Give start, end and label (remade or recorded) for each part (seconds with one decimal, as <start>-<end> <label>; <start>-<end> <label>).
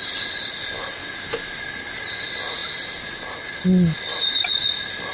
0.0-5.1 recorded